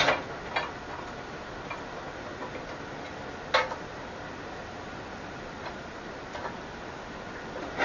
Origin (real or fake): real